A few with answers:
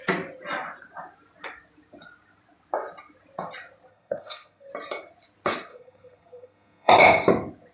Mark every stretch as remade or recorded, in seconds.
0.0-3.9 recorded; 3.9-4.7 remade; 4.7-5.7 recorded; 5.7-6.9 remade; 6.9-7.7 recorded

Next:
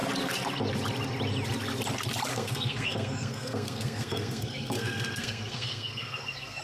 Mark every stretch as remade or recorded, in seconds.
0.0-2.3 recorded; 2.3-6.6 remade

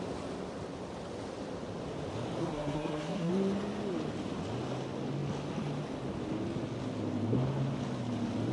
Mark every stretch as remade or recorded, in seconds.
0.0-2.4 recorded; 2.4-3.3 remade; 3.3-8.5 recorded